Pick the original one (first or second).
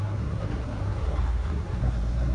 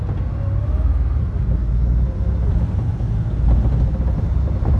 second